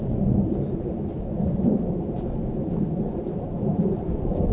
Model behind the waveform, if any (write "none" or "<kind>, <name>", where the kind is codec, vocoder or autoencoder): none